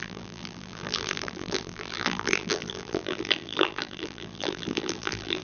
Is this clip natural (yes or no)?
no